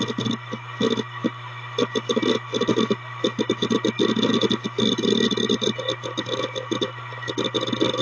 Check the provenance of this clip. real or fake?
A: real